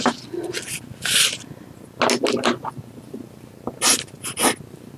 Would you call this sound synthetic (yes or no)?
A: no